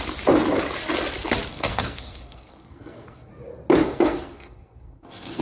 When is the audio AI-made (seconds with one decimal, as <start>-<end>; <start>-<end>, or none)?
1.5-3.3; 3.8-5.4